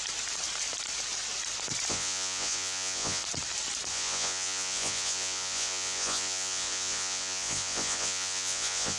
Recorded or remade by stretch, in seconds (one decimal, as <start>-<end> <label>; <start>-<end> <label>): 0.0-1.9 recorded; 1.9-3.2 remade; 3.2-3.9 recorded; 3.9-9.0 remade